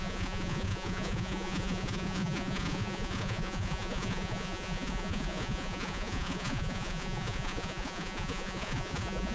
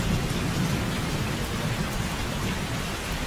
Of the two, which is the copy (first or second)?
first